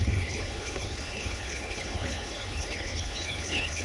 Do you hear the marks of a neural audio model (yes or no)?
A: yes